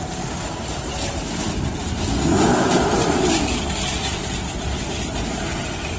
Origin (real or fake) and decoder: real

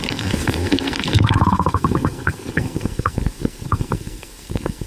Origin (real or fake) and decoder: fake, codec, SNAC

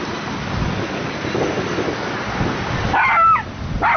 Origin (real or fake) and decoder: real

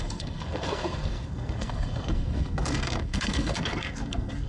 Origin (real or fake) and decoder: fake, codec, SNAC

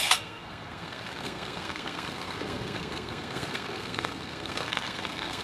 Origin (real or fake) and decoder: fake, codec, SNAC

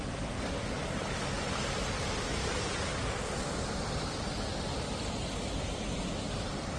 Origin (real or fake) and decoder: real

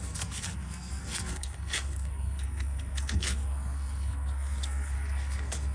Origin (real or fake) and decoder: fake, codec, SNAC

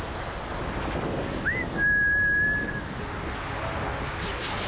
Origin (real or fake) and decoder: real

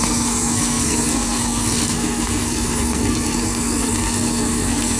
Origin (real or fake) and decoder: fake, codec, SNAC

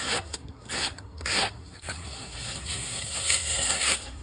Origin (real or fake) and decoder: fake, codec, SNAC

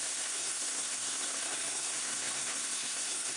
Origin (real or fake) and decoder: fake, codec, SNAC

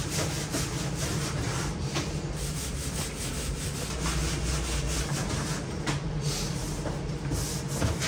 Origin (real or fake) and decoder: real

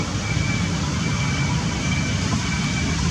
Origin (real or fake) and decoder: real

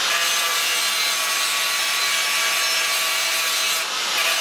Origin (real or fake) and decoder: real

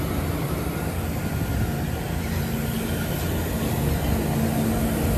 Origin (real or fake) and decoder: real